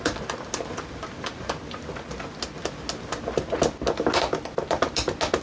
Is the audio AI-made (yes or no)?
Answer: no